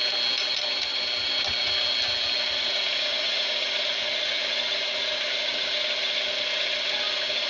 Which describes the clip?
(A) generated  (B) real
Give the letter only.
B